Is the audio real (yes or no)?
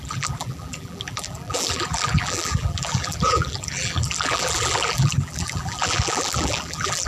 no